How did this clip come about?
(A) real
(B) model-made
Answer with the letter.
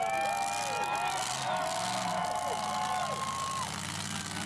A